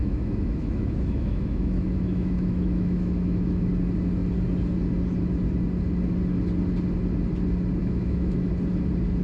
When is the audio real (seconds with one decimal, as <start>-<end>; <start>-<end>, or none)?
3.7-7.8; 8.5-9.2